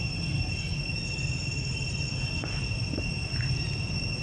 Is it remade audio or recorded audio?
recorded